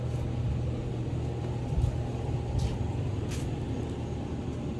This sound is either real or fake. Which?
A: real